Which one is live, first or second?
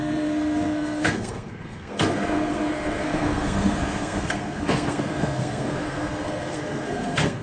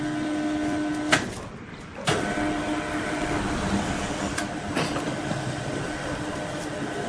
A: second